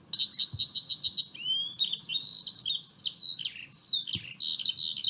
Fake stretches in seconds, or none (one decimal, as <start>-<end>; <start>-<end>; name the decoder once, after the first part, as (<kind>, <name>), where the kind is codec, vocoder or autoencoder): none